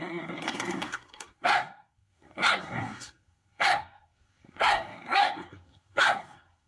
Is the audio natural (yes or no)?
no